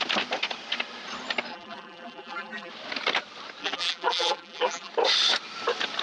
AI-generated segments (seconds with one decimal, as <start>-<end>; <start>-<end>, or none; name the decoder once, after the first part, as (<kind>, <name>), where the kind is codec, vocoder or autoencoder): 1.5-2.7 (vocoder, BigVGAN v2); 3.6-4.9